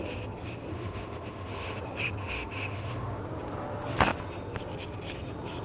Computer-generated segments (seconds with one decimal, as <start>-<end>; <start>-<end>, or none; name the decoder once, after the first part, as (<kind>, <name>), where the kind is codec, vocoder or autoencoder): 0.7-1.8 (autoencoder, DAC-VAE); 2.2-3.2